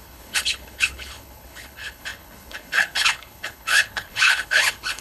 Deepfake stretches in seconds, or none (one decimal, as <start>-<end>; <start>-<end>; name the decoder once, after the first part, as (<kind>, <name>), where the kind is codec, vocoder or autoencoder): 0.0-5.0 (codec, HILCodec)